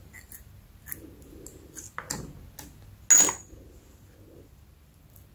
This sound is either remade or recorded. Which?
recorded